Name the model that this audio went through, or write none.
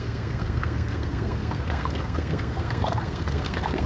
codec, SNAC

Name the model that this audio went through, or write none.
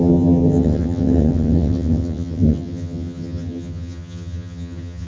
vocoder, HiFi-GAN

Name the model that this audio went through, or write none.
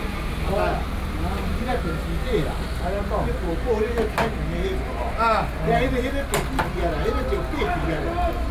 none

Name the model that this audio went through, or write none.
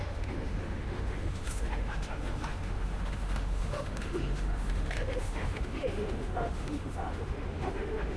autoencoder, DAC-VAE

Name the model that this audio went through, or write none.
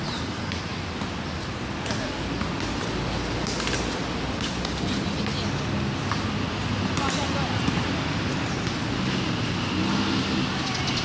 none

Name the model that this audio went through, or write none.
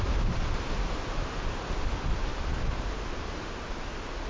none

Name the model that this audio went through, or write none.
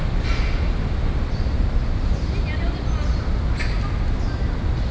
none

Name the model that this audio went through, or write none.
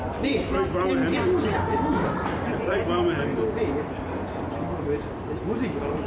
none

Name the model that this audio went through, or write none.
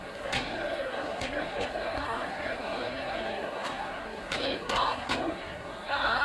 codec, SNAC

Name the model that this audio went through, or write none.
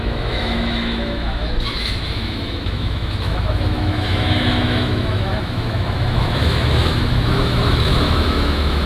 autoencoder, DAC-VAE